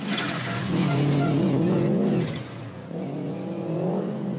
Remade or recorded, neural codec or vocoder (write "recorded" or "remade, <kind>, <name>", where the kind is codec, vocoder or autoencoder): remade, vocoder, Vocos